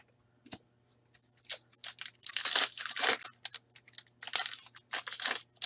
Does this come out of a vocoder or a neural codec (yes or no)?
no